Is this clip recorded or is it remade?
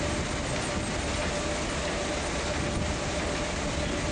recorded